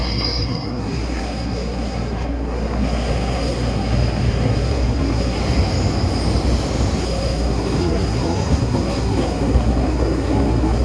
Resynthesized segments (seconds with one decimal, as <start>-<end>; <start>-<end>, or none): 0.0-5.4; 7.0-10.8